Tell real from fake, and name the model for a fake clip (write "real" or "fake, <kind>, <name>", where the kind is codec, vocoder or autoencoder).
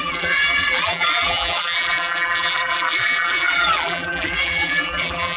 fake, vocoder, BigVGAN v2